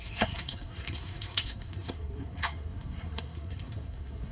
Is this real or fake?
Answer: fake